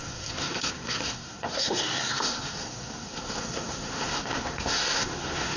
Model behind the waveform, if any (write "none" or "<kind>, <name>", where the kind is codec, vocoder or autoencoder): codec, SNAC